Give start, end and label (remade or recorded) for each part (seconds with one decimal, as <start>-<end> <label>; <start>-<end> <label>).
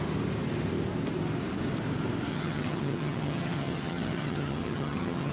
0.0-2.3 recorded; 2.3-5.3 remade